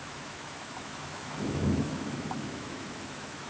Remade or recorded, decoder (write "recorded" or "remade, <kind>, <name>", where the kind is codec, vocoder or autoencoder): remade, autoencoder, DAC-VAE